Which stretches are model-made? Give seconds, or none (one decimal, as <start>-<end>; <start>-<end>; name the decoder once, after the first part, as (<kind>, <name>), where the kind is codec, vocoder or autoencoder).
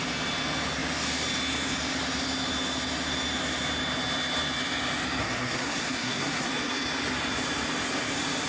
5.2-6.5 (codec, SNAC)